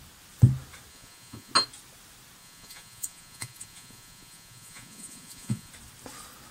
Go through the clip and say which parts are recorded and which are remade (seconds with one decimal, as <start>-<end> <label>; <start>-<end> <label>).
0.0-0.9 recorded; 0.9-1.5 remade; 1.5-2.4 recorded; 2.4-5.7 remade; 5.7-6.5 recorded

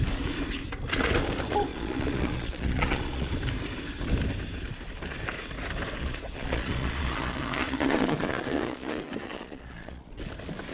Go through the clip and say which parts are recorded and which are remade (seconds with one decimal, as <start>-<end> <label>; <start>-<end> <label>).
0.0-1.7 recorded; 1.7-3.3 remade; 3.3-6.0 recorded; 6.0-10.2 remade; 10.2-10.7 recorded